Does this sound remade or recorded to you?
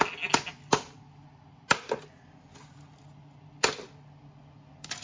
recorded